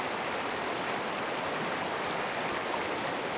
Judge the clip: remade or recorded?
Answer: recorded